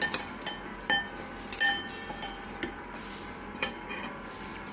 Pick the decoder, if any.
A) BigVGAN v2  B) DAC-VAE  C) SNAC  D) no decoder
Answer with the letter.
D